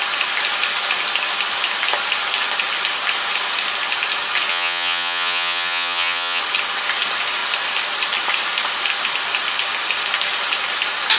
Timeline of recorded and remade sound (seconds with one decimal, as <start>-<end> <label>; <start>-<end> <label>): 0.0-4.5 recorded; 4.5-6.4 remade; 6.4-11.2 recorded

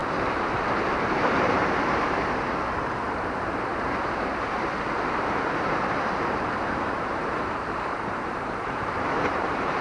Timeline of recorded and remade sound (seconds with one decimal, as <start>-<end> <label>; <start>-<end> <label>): 0.0-1.0 recorded; 1.0-3.7 remade; 3.7-5.2 recorded; 5.2-9.8 remade

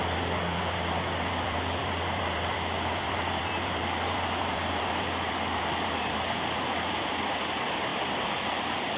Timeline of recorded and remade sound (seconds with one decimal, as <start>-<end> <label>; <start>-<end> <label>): 0.0-9.0 remade